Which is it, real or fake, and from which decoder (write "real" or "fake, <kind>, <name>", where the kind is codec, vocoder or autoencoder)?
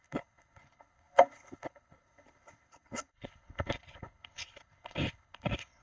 fake, codec, HILCodec